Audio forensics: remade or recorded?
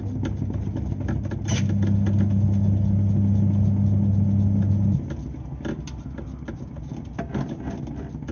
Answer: recorded